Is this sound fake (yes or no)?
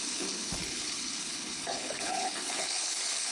yes